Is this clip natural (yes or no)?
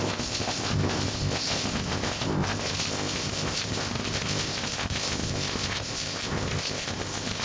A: no